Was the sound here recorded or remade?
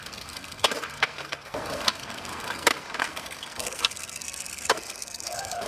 remade